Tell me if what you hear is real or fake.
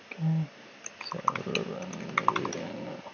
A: real